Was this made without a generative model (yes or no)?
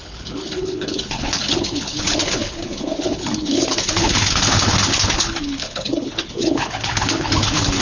no